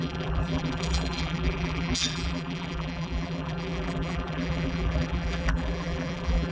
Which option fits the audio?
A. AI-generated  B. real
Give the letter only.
A